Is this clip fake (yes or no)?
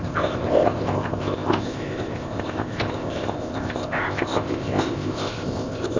yes